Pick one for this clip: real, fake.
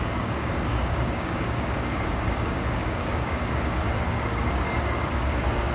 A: fake